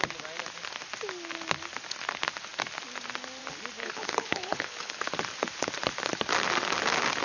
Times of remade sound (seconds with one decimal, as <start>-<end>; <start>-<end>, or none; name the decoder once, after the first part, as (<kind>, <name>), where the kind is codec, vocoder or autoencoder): 3.8-5.0 (codec, HILCodec)